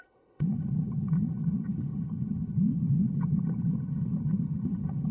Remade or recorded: remade